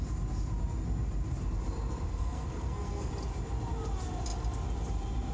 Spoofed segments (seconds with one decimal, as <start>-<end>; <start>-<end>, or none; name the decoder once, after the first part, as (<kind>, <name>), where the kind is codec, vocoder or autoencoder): 2.1-3.1 (codec, SNAC)